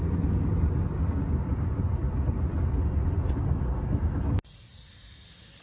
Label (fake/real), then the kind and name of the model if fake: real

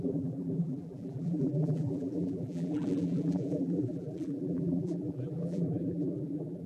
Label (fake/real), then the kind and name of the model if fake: fake, vocoder, BigVGAN v2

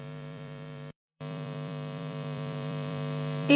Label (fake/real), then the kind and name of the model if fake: fake, vocoder, BigVGAN v2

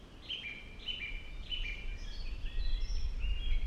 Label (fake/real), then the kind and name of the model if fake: real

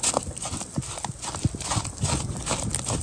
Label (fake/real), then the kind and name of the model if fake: real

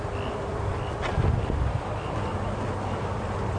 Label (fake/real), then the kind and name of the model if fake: fake, vocoder, BigVGAN v2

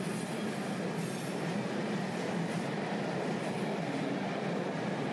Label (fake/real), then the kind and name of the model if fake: real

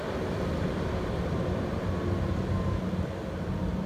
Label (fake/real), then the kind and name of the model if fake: real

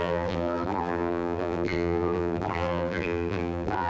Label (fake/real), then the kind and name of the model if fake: fake, vocoder, BigVGAN v2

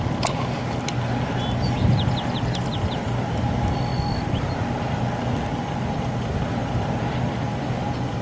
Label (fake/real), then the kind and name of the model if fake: real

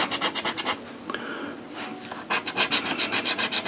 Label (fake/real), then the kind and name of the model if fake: real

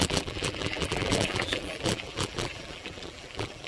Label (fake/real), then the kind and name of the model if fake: fake, vocoder, BigVGAN v2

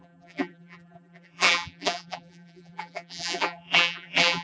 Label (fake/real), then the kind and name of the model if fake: fake, vocoder, BigVGAN v2